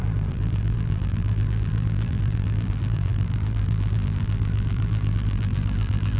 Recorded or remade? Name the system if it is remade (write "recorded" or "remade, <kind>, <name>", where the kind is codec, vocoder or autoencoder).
remade, vocoder, BigVGAN v2